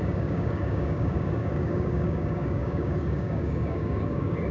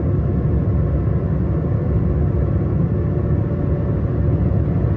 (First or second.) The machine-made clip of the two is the first